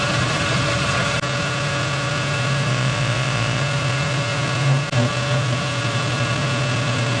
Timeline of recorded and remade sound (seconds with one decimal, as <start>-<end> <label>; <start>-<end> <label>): 0.0-2.7 recorded; 2.7-3.6 remade; 3.6-7.2 recorded